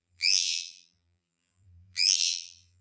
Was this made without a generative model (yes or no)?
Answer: no